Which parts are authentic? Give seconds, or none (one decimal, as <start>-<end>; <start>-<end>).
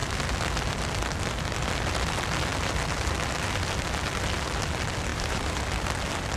0.0-5.1; 5.6-6.4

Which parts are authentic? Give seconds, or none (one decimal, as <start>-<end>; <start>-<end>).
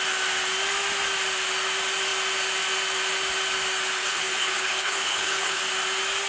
0.0-4.0; 5.6-6.3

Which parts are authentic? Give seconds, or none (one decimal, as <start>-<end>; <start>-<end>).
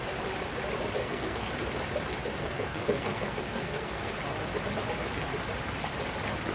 0.0-1.0; 1.5-2.4; 4.1-6.5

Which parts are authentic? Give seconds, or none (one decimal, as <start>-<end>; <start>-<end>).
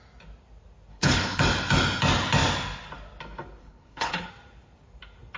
0.0-0.9; 1.4-3.6; 4.3-5.4